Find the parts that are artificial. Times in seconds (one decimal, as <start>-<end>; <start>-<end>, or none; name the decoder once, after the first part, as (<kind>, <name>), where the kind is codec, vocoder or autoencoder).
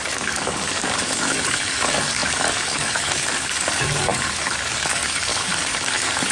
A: 0.0-6.3 (codec, DAC)